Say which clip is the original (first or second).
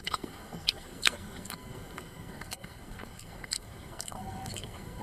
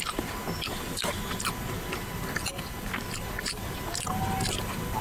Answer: second